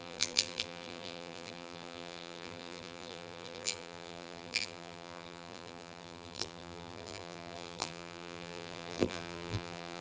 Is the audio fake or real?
fake